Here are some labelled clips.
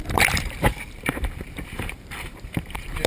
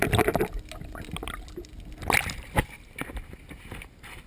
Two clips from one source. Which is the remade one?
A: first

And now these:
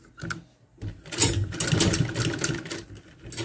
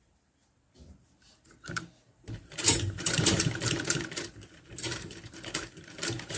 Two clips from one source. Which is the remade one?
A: second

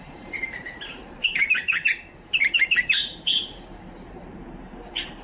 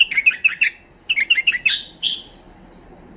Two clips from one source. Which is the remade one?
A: first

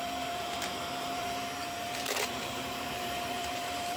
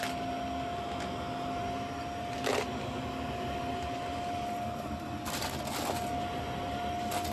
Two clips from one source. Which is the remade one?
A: first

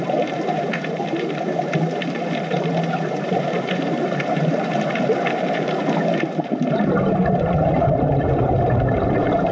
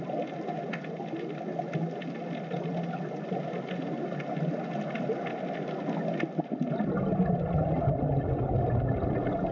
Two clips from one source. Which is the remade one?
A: first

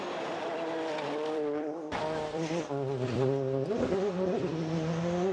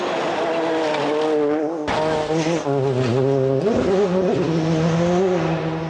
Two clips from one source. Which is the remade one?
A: first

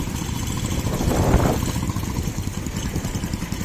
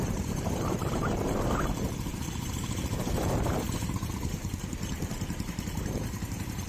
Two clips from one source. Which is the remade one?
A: second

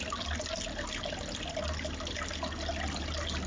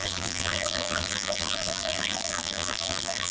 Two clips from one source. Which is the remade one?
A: second